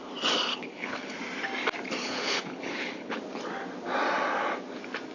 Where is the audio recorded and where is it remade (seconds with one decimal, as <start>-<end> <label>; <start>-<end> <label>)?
0.0-0.5 recorded; 0.5-1.2 remade; 1.2-2.0 recorded; 2.0-3.2 remade; 3.2-5.1 recorded